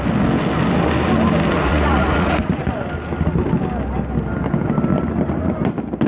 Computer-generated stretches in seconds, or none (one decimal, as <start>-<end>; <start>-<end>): 1.7-2.9